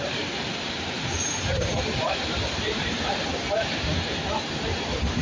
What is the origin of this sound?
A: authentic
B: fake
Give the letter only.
B